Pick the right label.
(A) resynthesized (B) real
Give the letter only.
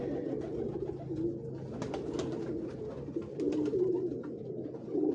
B